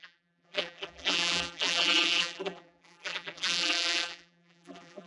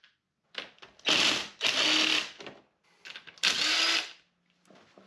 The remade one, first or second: first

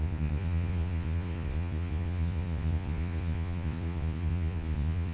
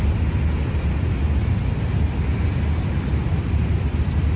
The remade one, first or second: first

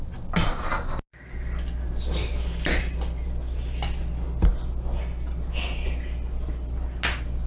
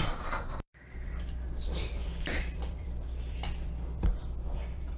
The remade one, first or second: second